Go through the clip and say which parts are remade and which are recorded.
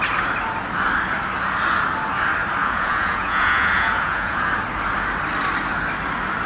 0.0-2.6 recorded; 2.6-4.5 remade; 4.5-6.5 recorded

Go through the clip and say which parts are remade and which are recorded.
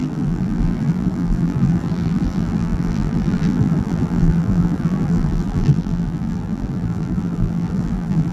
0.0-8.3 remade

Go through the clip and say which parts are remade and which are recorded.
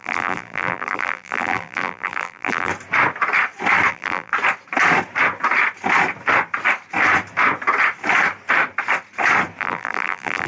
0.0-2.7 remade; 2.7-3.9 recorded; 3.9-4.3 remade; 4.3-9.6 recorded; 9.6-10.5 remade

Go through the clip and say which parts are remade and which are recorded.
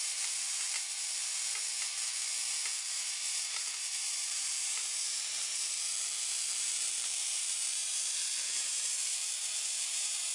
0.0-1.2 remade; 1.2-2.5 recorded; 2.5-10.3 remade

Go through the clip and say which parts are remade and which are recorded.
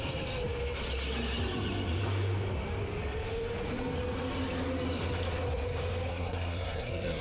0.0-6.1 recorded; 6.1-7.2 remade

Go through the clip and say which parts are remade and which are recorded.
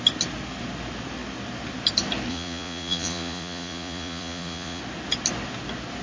0.0-2.3 recorded; 2.3-4.8 remade; 4.8-6.0 recorded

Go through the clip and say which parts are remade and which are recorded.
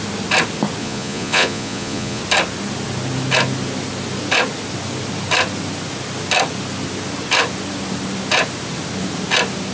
0.0-0.8 recorded; 0.8-2.2 remade; 2.2-9.7 recorded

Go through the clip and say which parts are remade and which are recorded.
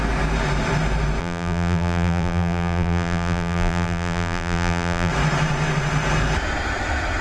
0.0-1.2 recorded; 1.2-5.1 remade; 5.1-7.2 recorded